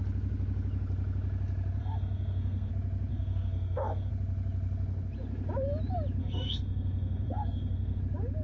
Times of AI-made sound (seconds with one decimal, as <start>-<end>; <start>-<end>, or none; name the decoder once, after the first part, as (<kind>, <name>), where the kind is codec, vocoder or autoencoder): 1.8-2.7 (codec, SNAC); 3.1-4.1; 6.2-8.0